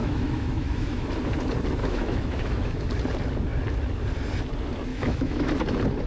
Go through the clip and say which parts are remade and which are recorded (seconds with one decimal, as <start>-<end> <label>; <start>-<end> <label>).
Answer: 0.0-1.1 remade; 1.1-1.8 recorded; 1.8-2.9 remade; 2.9-4.9 recorded; 4.9-5.5 remade; 5.5-6.1 recorded

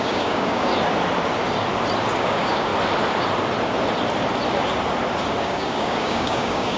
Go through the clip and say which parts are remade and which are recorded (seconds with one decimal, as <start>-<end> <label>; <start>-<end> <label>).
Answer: 0.0-0.7 remade; 0.7-2.2 recorded; 2.2-2.7 remade; 2.7-5.4 recorded; 5.4-6.8 remade

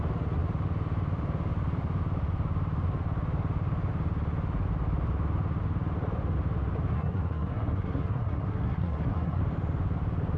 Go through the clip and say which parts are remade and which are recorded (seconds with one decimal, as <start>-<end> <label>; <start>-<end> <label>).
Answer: 0.0-6.9 recorded; 6.9-9.4 remade; 9.4-10.4 recorded

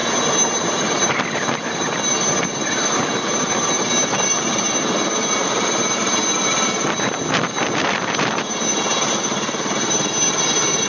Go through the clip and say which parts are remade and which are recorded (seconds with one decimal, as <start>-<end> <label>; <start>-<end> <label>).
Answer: 0.0-10.9 recorded

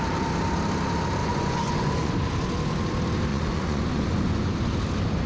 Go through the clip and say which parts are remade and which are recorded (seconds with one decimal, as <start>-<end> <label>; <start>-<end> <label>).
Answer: 0.0-1.2 recorded; 1.2-2.1 remade; 2.1-3.3 recorded; 3.3-4.5 remade; 4.5-5.3 recorded